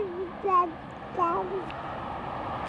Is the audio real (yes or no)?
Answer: yes